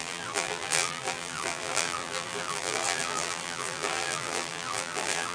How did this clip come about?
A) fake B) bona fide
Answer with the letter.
A